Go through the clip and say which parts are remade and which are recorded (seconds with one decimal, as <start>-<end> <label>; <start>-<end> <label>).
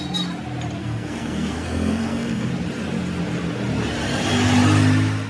0.0-0.8 recorded; 0.8-2.5 remade; 2.5-5.3 recorded